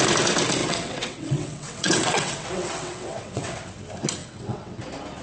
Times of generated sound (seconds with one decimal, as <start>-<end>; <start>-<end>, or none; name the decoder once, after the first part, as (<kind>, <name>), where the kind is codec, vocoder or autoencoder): 0.6-3.7 (vocoder, WaveNeXt); 4.2-4.8